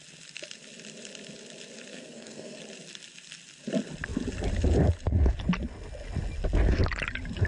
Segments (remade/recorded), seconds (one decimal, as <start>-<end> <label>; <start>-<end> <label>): 0.0-1.9 recorded; 1.9-2.6 remade; 2.6-7.5 recorded